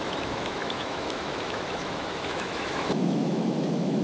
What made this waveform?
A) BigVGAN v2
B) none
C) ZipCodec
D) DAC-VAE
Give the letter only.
D